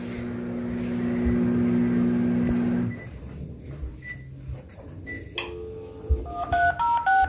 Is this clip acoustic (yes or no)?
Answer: yes